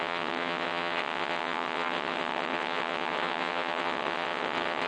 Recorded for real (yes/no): no